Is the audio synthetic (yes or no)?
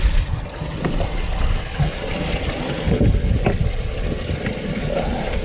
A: no